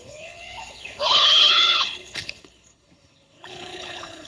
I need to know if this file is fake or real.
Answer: fake